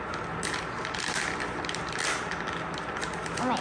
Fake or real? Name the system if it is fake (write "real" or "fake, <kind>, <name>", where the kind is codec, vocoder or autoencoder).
real